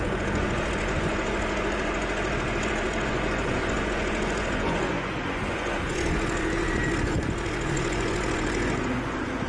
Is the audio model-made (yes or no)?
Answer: yes